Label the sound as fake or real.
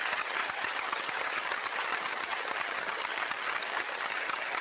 fake